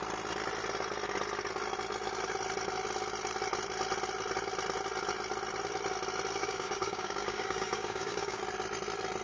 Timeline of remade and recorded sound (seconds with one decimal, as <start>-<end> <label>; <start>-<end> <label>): 0.0-6.4 recorded; 6.4-8.4 remade; 8.4-9.2 recorded